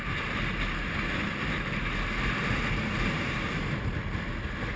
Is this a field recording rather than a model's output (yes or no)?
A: yes